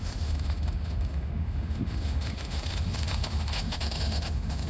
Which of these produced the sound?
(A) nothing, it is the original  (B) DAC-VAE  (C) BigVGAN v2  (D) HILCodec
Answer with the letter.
B